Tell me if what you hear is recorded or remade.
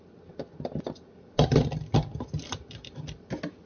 recorded